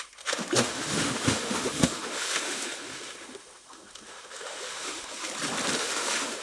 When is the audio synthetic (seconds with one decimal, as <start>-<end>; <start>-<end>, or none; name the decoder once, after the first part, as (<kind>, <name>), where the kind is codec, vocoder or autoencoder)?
0.0-5.3 (autoencoder, DAC-VAE); 5.8-6.4